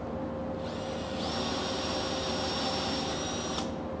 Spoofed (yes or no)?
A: no